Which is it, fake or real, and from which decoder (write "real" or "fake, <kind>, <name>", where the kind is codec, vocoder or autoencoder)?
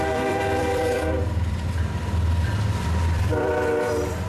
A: fake, vocoder, BigVGAN v2